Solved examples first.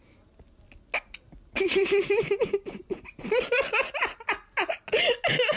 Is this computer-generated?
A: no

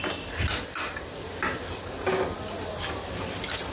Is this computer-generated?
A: no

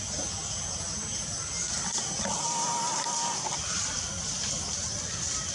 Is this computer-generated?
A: no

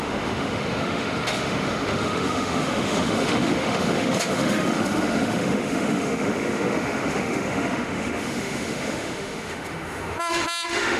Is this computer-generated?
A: yes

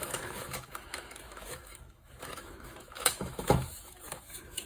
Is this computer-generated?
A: yes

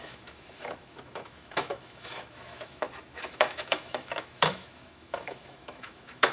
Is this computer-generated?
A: yes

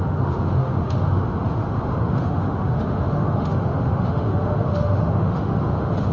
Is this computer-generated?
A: yes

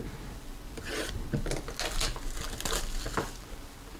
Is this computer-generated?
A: no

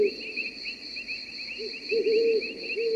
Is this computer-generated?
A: no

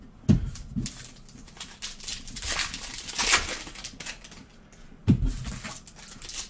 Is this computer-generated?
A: no